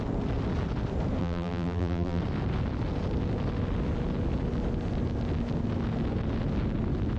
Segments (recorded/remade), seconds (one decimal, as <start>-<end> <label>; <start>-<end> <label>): 0.0-1.2 recorded; 1.2-2.2 remade; 2.2-7.2 recorded

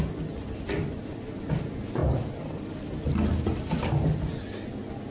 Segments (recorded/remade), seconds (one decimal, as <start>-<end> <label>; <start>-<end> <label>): 0.0-0.4 recorded; 0.4-1.5 remade; 1.5-2.0 recorded; 2.0-2.6 remade; 2.6-5.1 recorded

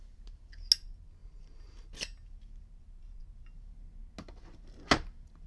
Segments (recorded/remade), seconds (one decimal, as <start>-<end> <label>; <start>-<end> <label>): 0.0-5.5 recorded

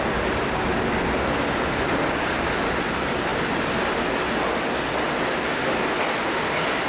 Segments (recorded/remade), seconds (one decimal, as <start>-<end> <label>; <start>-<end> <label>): 0.0-6.9 recorded

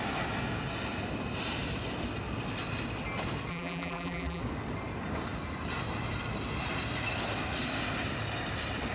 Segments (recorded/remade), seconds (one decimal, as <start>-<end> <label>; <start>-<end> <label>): 0.0-3.5 recorded; 3.5-4.4 remade; 4.4-8.9 recorded

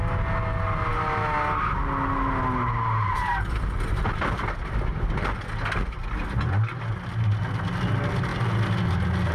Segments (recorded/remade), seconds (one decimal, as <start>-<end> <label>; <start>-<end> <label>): 0.0-9.3 recorded